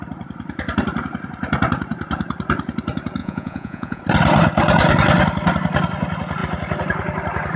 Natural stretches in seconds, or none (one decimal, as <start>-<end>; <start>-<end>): 0.0-3.2; 4.0-7.6